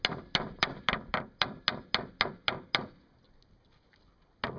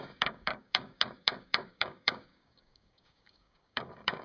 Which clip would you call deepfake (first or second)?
second